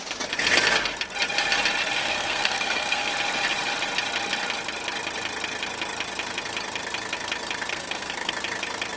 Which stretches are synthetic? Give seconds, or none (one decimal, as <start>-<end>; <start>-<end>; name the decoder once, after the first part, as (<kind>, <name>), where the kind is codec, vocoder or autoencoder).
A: 2.0-3.1 (codec, SNAC); 7.7-8.3